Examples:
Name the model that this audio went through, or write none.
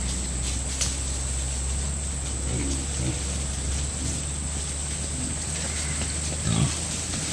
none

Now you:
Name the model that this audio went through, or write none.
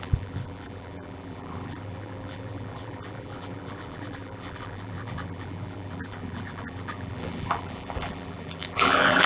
vocoder, BigVGAN v2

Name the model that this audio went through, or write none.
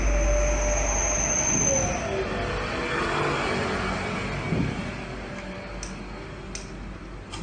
none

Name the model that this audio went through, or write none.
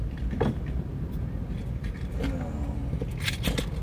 none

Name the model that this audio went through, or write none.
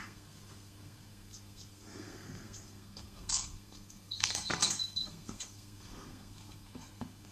codec, SNAC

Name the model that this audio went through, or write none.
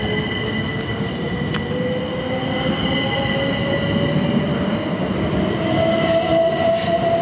none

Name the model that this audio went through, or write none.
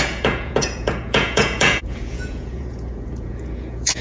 vocoder, Vocos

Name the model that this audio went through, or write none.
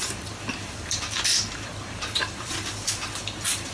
vocoder, BigVGAN v2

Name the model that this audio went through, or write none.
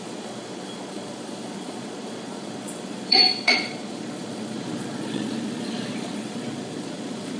vocoder, Vocos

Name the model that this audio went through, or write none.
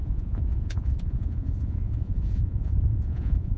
vocoder, Vocos